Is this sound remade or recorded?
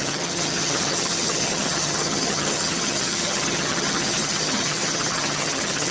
remade